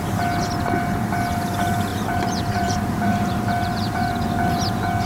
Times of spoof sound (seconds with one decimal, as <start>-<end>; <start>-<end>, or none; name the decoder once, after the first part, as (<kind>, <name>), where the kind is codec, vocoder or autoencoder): 1.9-4.1 (vocoder, BigVGAN v2)